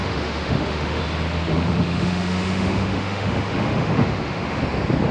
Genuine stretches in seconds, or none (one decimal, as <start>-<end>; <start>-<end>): 1.0-1.5; 4.6-5.1